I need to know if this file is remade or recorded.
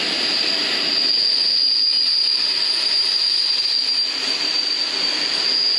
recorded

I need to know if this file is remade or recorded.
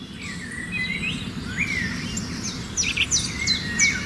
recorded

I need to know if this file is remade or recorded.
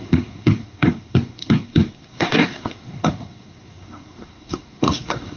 remade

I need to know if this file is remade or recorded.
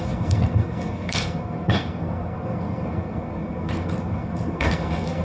remade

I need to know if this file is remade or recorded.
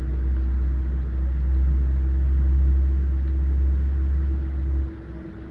recorded